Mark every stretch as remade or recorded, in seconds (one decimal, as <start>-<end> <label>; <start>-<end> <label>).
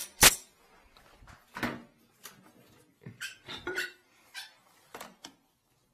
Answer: 0.0-2.4 recorded; 2.4-5.9 remade